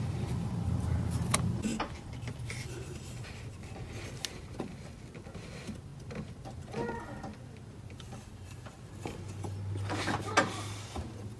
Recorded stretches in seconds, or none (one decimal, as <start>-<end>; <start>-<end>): 1.7-4.4; 5.9-11.0